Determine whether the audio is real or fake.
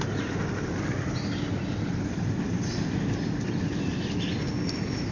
real